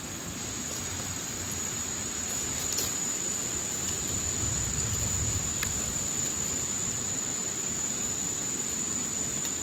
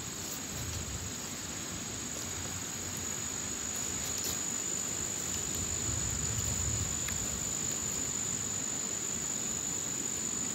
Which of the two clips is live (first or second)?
second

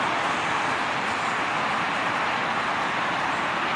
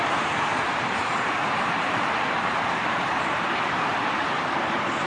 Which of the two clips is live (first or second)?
first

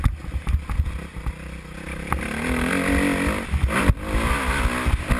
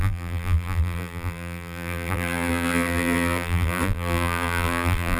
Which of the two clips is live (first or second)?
first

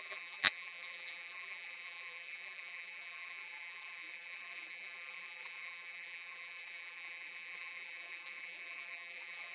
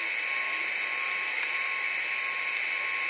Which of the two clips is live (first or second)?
second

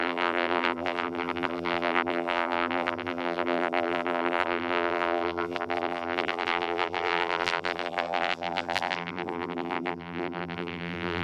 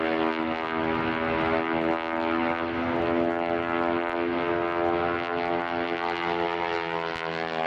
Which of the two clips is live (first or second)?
second